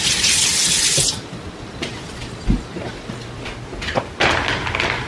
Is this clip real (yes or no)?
yes